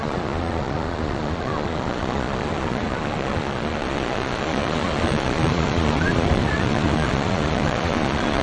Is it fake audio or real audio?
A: fake